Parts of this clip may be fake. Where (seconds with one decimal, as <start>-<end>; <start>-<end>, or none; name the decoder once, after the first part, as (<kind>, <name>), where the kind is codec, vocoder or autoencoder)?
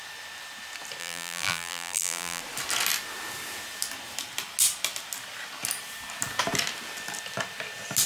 1.0-2.4 (vocoder, BigVGAN v2)